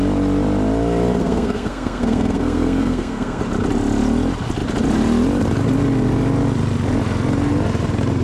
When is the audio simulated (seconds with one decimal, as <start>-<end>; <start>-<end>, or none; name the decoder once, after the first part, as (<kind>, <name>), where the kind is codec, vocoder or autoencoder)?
1.2-3.4 (codec, SNAC)